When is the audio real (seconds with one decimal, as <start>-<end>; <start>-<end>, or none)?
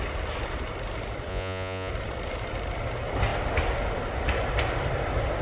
0.0-1.3; 1.9-5.4